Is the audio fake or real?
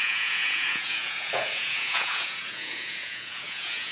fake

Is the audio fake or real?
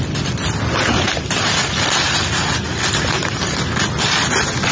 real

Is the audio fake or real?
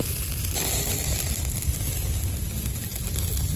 real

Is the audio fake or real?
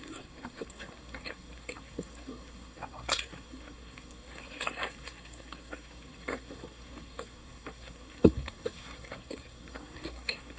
fake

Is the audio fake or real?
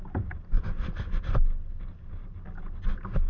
real